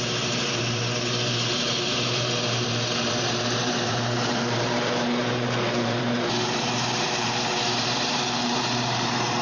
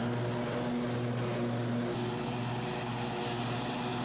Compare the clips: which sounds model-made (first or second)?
first